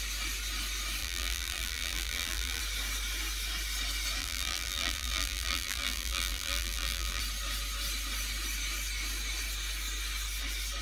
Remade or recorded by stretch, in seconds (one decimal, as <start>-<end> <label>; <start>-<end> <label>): 0.0-1.0 recorded; 1.0-2.6 remade; 2.6-4.2 recorded; 4.2-7.2 remade; 7.2-10.8 recorded